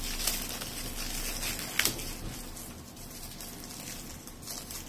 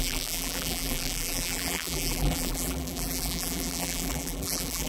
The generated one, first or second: second